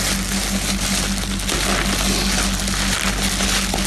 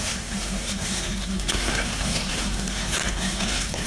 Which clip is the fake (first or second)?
second